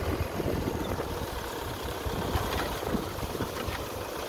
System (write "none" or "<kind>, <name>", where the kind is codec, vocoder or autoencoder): vocoder, BigVGAN v2